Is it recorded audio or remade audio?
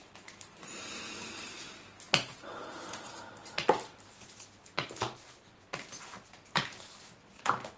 recorded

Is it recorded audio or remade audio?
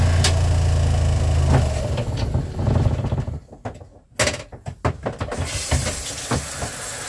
recorded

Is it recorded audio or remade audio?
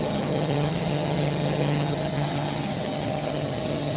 remade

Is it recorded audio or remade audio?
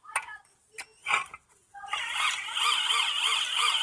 recorded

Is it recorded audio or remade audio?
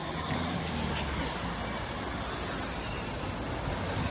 recorded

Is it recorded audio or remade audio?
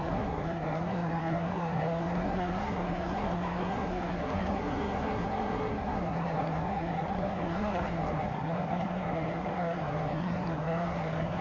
remade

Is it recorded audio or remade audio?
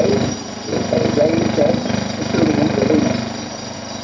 recorded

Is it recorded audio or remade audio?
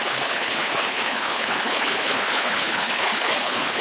remade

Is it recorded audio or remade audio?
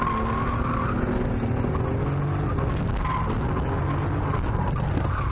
recorded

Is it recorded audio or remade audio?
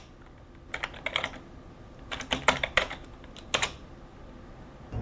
recorded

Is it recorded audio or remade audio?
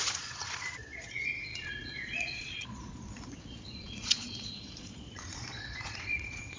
remade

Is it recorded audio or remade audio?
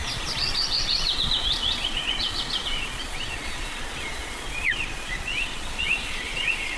remade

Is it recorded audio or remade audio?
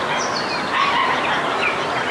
recorded